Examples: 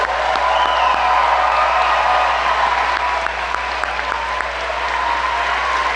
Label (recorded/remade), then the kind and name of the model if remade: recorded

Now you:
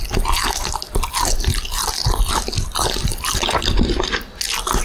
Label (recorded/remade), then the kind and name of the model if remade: recorded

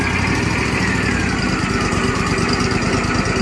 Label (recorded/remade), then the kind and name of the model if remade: recorded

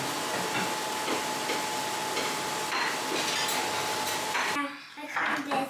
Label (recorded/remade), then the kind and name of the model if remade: recorded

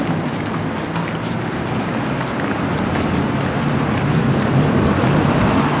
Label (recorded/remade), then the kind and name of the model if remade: recorded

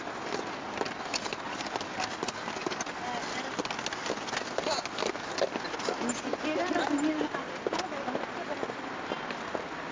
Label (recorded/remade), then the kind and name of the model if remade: recorded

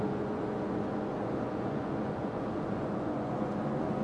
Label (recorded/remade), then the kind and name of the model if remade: remade, vocoder, Vocos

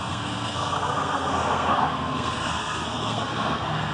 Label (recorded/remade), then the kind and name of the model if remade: remade, codec, SNAC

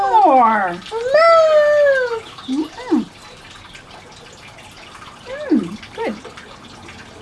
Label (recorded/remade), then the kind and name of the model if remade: recorded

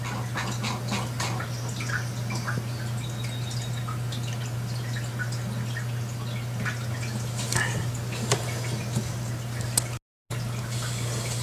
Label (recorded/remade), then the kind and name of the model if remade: recorded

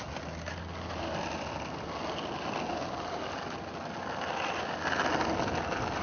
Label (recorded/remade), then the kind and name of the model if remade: recorded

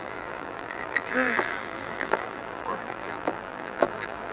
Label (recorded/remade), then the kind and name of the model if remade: remade, vocoder, BigVGAN v2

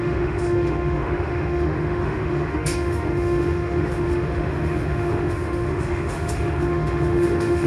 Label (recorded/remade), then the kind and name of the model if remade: remade, autoencoder, DAC-VAE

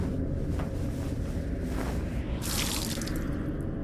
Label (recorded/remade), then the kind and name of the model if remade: recorded